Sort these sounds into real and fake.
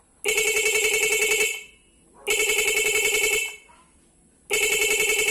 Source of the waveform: real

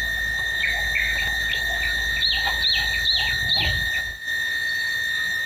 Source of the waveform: real